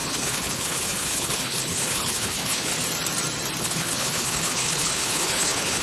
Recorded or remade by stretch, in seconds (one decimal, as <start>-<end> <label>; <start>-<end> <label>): 0.0-2.7 remade; 2.7-3.6 recorded; 3.6-5.8 remade